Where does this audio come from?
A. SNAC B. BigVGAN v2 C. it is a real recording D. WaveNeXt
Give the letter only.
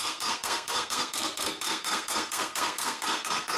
A